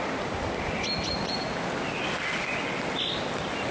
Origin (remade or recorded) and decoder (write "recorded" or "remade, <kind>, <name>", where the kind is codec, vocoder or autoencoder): recorded